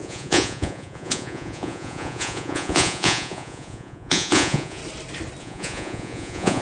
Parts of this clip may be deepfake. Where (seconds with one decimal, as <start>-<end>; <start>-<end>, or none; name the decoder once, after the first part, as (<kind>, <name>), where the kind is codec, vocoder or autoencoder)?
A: 0.0-4.8 (vocoder, Vocos); 5.4-6.6